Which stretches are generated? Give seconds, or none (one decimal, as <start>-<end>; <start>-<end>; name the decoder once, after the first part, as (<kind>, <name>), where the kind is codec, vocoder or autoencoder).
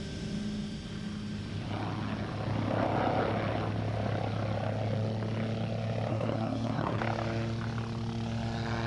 6.1-7.0 (codec, SNAC)